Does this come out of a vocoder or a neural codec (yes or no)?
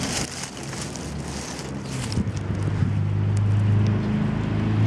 no